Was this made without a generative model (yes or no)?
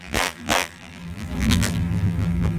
no